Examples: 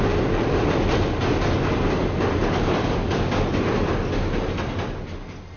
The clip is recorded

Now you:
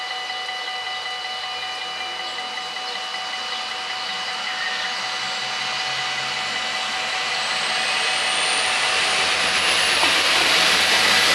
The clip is recorded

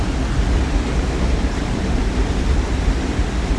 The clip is recorded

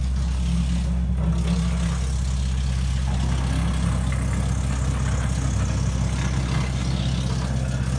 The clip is recorded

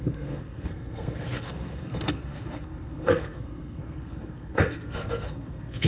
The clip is remade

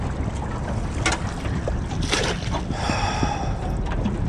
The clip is recorded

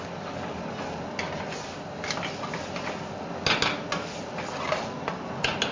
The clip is recorded